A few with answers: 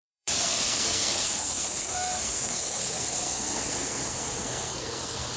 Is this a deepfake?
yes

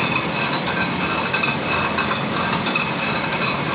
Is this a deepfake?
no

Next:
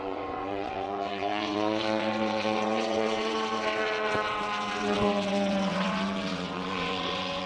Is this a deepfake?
yes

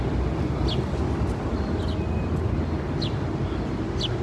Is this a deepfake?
no